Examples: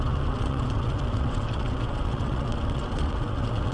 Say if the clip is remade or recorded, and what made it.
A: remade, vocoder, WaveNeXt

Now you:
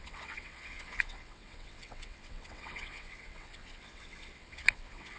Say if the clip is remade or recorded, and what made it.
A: remade, vocoder, WaveNeXt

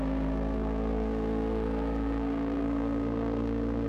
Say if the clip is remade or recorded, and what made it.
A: remade, codec, SNAC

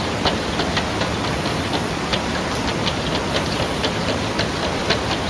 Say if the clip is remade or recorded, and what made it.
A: recorded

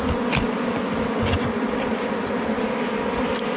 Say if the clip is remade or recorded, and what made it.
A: recorded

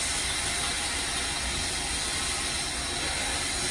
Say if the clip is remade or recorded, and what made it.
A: recorded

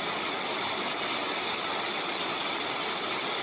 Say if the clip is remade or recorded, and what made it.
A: recorded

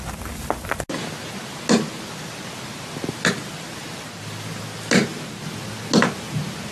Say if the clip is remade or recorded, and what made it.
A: recorded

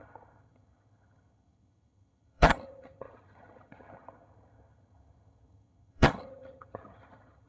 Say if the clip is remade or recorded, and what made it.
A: remade, vocoder, HiFi-GAN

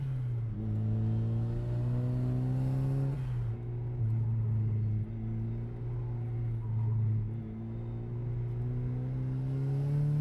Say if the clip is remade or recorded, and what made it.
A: recorded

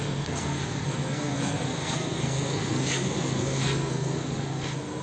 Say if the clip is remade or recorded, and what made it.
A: remade, codec, SNAC